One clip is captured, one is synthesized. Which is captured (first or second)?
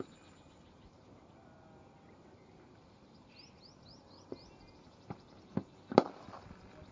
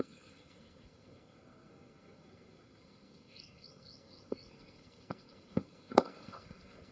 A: first